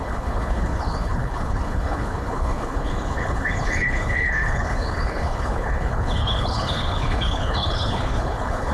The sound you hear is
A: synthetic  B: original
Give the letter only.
A